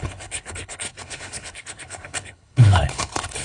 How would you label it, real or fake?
fake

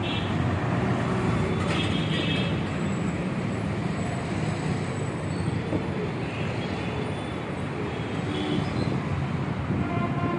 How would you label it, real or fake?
real